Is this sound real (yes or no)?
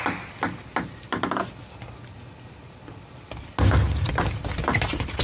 yes